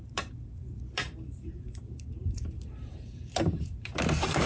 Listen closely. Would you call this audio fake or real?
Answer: fake